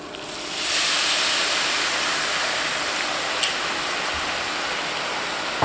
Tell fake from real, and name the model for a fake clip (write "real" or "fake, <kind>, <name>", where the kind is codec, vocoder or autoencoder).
real